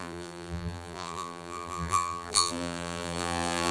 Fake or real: fake